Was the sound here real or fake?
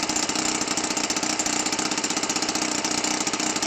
real